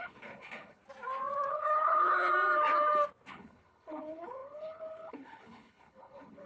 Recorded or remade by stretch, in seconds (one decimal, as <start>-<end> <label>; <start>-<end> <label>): 0.0-0.8 remade; 0.8-1.5 recorded; 1.5-2.3 remade; 2.3-3.3 recorded; 3.3-6.5 remade